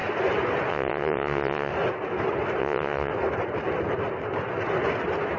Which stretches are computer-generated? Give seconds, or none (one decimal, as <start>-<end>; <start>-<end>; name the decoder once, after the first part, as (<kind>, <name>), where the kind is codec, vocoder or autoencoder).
0.7-1.7 (vocoder, WaveNeXt); 2.6-3.1